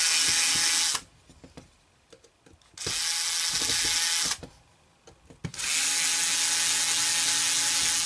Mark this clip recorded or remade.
recorded